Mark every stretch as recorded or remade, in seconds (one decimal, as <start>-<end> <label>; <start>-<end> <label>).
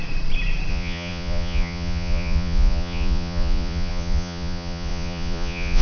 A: 0.0-0.7 recorded; 0.7-5.8 remade